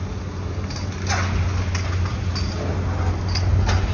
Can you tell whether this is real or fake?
real